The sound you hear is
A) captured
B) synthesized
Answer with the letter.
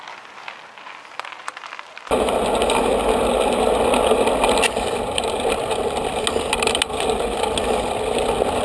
A